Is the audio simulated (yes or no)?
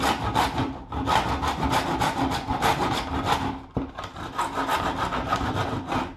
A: no